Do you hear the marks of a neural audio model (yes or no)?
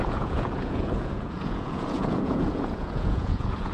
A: yes